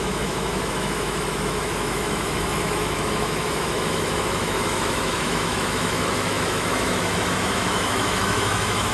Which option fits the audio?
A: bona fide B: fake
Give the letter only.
B